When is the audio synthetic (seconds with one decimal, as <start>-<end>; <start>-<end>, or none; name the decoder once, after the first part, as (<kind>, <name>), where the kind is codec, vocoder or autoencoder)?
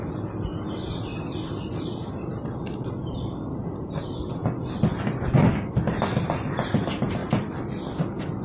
none